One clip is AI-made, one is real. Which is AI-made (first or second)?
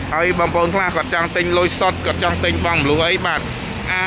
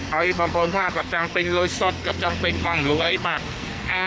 second